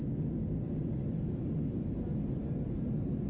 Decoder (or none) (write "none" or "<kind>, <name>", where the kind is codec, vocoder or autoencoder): none